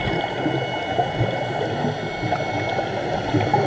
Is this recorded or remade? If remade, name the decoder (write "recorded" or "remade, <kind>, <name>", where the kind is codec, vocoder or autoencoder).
recorded